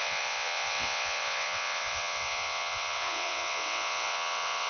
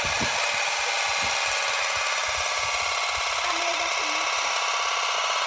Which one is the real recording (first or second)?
second